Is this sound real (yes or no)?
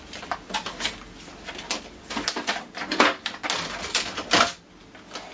yes